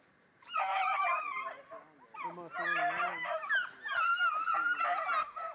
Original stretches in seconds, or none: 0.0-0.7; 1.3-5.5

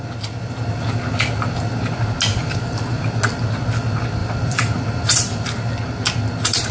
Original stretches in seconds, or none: 0.0-2.3; 3.0-4.2; 5.7-6.7

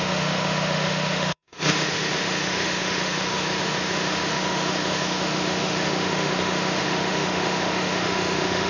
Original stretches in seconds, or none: none

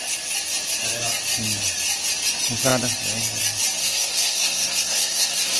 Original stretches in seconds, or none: 0.0-3.8

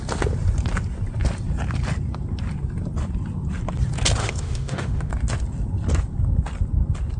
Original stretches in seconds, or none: 0.0-4.2; 5.1-7.2

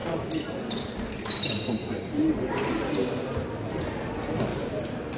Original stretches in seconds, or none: 0.0-1.8; 2.3-4.5

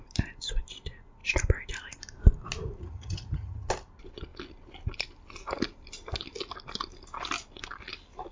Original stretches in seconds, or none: 0.0-2.8; 3.7-8.3